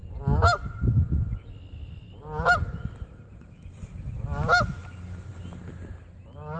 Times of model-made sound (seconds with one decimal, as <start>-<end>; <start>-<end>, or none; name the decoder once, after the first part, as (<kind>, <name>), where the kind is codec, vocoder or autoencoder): none